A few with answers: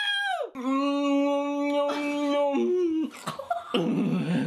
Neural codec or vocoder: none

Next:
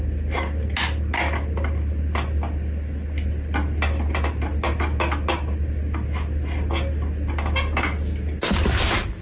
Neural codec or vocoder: none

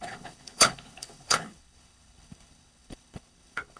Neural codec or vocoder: codec, HILCodec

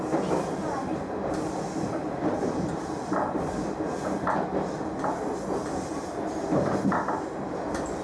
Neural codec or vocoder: none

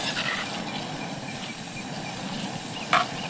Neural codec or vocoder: none